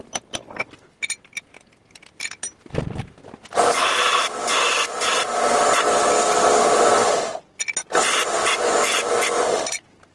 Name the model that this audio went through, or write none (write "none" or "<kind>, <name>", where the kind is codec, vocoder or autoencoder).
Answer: none